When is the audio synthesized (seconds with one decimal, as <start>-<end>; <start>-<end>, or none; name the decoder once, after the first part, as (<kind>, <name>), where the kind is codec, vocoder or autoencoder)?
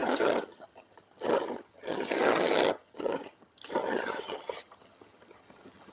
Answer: 0.0-5.9 (vocoder, HiFi-GAN)